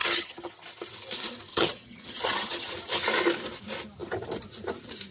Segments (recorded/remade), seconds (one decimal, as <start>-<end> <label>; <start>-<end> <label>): 0.0-0.5 remade; 0.5-1.5 recorded; 1.5-2.7 remade; 2.7-5.1 recorded